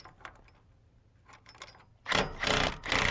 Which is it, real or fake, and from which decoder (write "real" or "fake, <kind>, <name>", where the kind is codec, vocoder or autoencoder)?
real